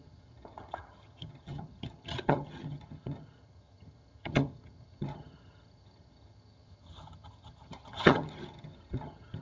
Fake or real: fake